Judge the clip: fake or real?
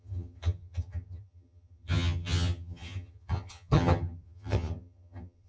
fake